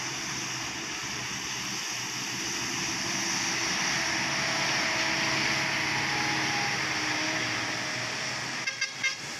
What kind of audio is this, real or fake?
real